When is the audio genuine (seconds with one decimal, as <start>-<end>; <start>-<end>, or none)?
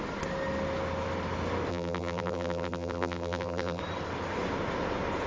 0.0-1.7; 3.8-5.3